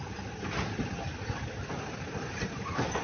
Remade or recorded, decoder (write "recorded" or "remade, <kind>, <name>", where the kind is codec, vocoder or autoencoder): recorded